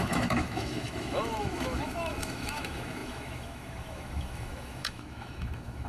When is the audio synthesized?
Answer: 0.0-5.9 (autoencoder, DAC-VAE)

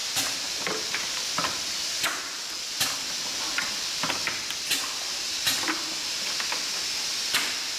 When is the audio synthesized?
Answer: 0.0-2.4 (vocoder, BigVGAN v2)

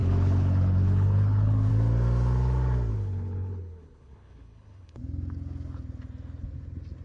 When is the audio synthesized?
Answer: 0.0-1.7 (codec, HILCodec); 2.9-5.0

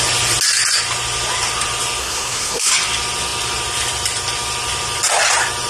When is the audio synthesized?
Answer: 2.0-2.7 (codec, SNAC)

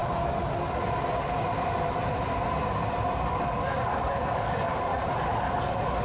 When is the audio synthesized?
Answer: 3.3-4.9 (codec, DAC)

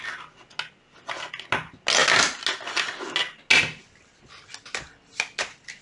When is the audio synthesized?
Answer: none

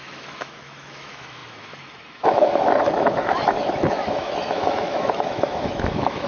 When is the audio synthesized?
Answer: 0.0-6.3 (autoencoder, DAC-VAE)